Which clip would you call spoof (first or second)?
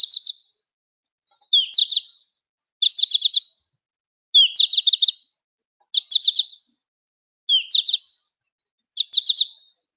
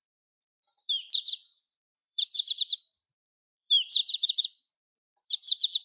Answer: second